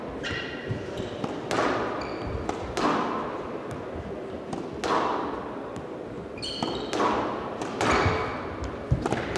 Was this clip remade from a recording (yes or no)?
no